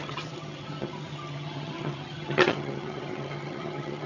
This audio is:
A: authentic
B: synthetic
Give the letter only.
B